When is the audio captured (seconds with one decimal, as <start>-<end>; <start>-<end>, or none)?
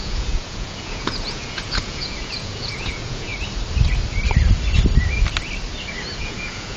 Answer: 3.3-6.2